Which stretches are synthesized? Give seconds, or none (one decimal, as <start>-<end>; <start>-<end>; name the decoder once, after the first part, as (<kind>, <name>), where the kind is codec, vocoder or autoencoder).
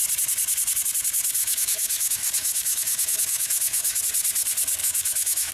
1.4-4.0 (autoencoder, DAC-VAE); 4.8-5.5